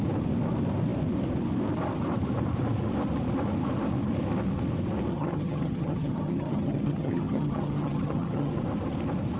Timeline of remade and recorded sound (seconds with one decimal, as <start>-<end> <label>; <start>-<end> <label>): 0.0-5.1 recorded; 5.1-8.5 remade; 8.5-9.4 recorded